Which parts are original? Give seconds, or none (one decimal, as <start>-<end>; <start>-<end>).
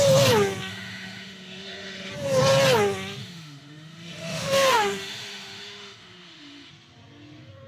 0.0-0.7; 2.1-3.2; 6.7-7.7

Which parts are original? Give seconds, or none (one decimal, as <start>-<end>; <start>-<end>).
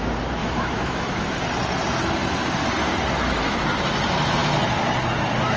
0.0-0.4; 1.4-5.6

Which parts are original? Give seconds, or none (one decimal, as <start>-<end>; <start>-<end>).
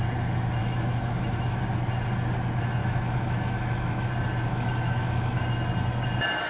0.0-0.6; 1.6-2.8; 4.1-4.5; 5.4-6.5